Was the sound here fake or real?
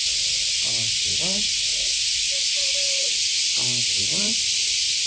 real